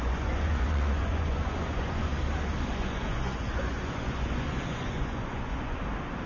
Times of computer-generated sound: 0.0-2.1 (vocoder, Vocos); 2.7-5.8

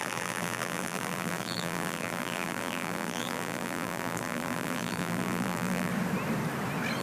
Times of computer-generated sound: 0.0-5.9 (vocoder, BigVGAN v2)

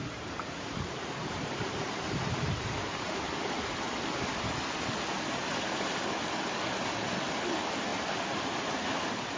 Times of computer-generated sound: 0.0-3.7 (vocoder, BigVGAN v2); 7.9-8.8

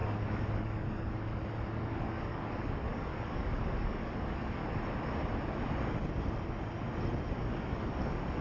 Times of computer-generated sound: 0.0-4.6 (codec, DAC); 7.4-8.4

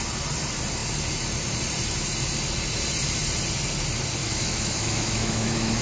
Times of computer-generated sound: 4.2-5.8 (autoencoder, DAC-VAE)

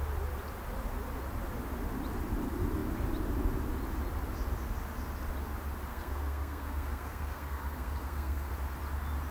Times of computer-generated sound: 5.9-8.5 (codec, SNAC)

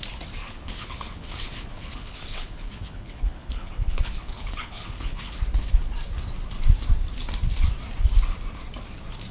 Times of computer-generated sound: 0.4-5.4 (codec, HILCodec)

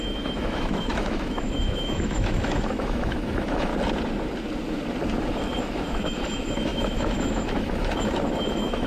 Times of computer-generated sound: 0.0-3.7 (autoencoder, DAC-VAE); 5.6-8.9